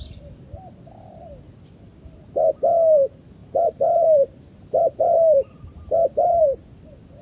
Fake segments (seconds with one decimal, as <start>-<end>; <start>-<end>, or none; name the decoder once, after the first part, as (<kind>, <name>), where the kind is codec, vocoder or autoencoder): 3.4-6.4 (vocoder, BigVGAN v2)